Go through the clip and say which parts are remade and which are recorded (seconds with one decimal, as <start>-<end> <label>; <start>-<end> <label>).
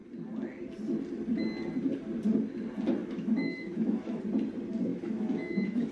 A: 0.0-3.0 recorded; 3.0-4.2 remade; 4.2-4.9 recorded; 4.9-5.9 remade